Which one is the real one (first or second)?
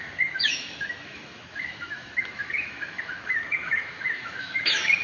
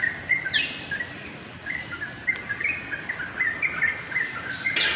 second